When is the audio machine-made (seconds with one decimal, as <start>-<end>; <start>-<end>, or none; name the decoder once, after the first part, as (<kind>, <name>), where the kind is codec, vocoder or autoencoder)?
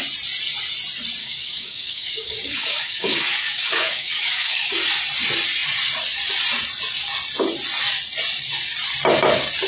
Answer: 1.2-4.7 (codec, DAC)